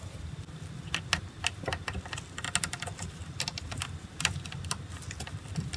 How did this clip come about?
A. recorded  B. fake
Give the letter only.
A